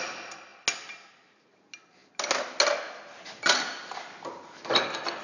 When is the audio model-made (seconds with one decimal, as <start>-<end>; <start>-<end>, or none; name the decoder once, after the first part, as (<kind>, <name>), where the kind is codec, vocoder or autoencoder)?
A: none